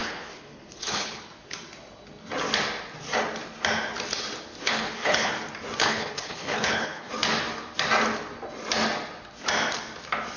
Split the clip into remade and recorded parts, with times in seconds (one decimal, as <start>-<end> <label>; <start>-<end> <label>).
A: 0.0-1.3 remade; 1.3-4.6 recorded; 4.6-5.3 remade; 5.3-5.8 recorded; 5.8-7.1 remade; 7.1-10.4 recorded